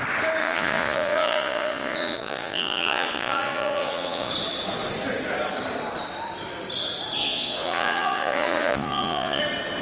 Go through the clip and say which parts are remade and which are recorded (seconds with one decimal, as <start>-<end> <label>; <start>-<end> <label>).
0.0-0.4 recorded; 0.4-4.3 remade; 4.3-7.2 recorded; 7.2-9.4 remade; 9.4-9.8 recorded